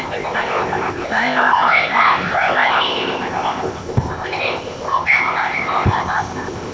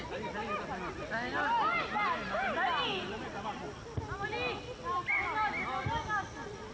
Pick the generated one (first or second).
first